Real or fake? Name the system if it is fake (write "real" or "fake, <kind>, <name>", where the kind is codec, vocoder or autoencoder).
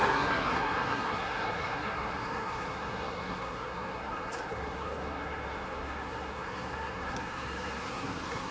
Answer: fake, codec, SNAC